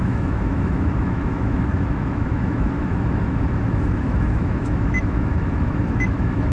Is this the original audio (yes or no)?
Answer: no